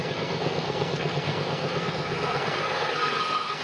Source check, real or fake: fake